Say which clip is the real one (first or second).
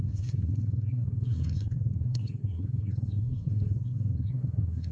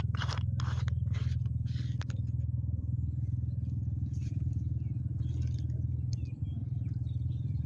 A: second